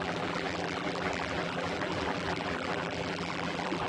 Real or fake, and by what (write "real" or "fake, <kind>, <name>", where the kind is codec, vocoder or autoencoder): fake, vocoder, BigVGAN v2